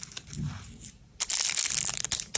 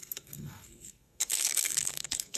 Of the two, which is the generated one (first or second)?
second